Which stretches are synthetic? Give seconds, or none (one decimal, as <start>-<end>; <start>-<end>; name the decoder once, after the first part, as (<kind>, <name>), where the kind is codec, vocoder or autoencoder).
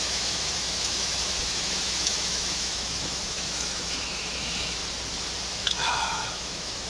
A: 0.0-4.8 (autoencoder, DAC-VAE); 5.5-6.9